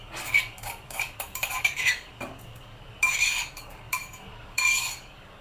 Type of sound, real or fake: fake